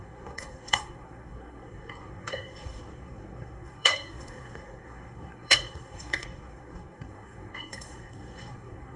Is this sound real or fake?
fake